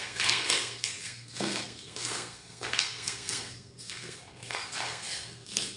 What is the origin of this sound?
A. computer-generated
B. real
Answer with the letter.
A